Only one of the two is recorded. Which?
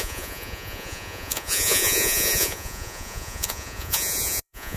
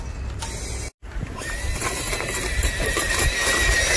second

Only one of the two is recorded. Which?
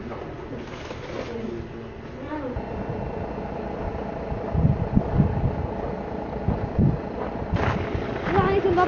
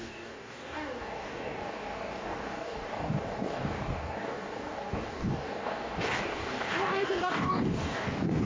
first